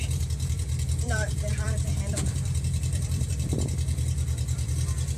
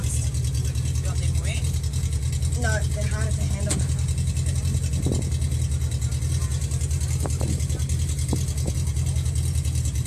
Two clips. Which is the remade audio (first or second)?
first